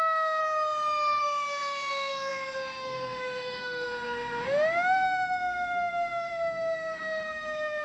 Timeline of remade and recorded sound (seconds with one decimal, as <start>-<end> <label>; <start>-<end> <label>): 0.0-0.4 remade; 0.4-1.2 recorded; 1.2-7.8 remade